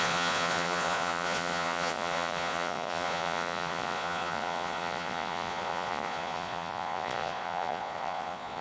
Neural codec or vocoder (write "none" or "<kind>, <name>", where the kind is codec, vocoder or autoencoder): vocoder, Vocos